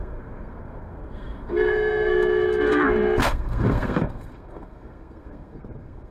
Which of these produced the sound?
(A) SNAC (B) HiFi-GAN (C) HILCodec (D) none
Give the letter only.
A